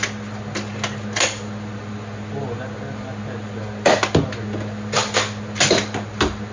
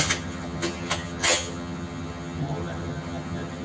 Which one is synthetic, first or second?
second